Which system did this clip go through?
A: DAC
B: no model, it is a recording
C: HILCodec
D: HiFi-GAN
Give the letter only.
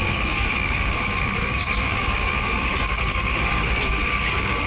A